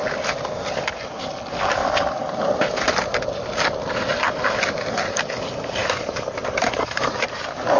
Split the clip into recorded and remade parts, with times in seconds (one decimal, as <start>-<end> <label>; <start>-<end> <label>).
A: 0.0-1.8 recorded; 1.8-2.7 remade; 2.7-5.8 recorded; 5.8-7.8 remade